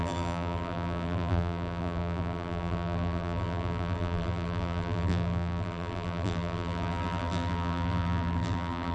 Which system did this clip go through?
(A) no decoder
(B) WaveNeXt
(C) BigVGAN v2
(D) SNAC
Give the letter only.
C